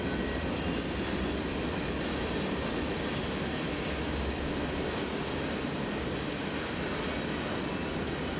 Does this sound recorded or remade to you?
recorded